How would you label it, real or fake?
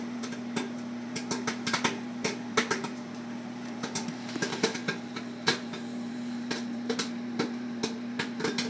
fake